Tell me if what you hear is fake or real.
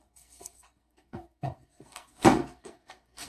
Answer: fake